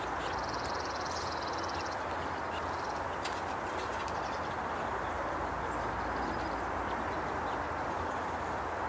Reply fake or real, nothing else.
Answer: real